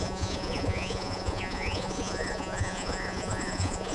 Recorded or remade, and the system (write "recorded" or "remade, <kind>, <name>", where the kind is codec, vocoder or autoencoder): remade, vocoder, Vocos